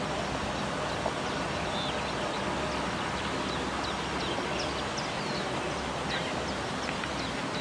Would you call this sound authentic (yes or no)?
yes